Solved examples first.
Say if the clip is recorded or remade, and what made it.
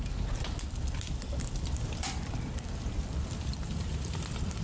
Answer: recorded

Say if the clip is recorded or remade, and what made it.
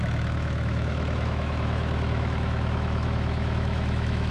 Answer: remade, autoencoder, DAC-VAE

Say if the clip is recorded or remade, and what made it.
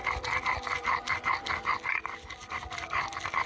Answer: recorded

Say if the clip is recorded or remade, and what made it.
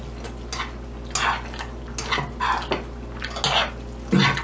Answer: recorded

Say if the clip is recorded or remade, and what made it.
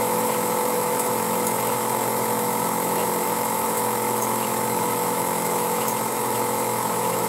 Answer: remade, autoencoder, DAC-VAE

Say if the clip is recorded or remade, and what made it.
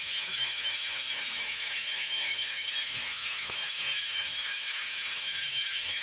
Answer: remade, autoencoder, DAC-VAE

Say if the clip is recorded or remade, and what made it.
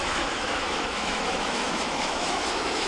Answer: remade, autoencoder, DAC-VAE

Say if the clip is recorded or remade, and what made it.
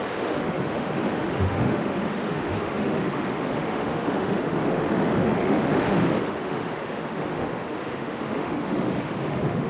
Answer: remade, autoencoder, DAC-VAE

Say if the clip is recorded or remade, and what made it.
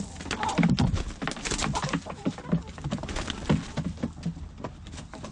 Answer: recorded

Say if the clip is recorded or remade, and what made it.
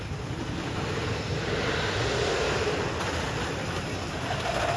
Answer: recorded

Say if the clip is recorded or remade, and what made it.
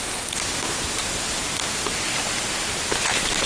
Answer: recorded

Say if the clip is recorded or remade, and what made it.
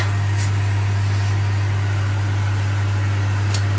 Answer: recorded